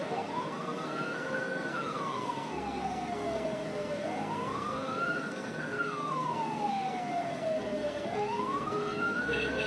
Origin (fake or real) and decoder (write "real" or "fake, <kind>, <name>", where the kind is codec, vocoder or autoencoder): fake, codec, SNAC